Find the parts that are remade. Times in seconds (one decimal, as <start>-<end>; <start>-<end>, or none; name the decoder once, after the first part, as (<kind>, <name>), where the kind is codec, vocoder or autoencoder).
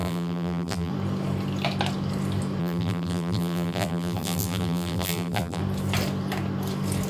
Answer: 0.0-0.9 (vocoder, BigVGAN v2); 2.6-5.6